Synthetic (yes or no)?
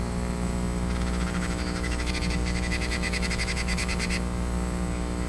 yes